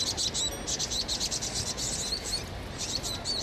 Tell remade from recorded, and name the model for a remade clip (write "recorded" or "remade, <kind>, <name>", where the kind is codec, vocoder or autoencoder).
recorded